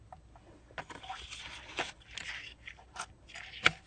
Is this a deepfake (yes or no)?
no